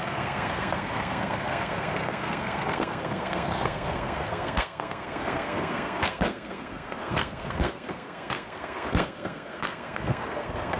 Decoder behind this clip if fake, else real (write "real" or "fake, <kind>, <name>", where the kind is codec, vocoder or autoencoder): fake, codec, SNAC